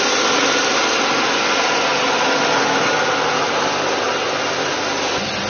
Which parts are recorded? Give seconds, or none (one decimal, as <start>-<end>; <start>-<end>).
0.0-5.5